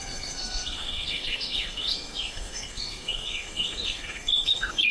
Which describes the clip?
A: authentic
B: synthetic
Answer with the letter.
B